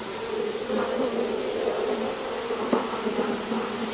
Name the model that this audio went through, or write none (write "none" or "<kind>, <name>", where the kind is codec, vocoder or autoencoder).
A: none